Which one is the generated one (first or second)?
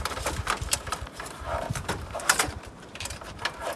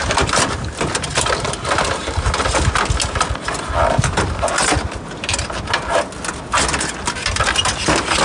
first